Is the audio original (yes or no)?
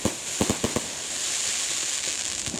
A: yes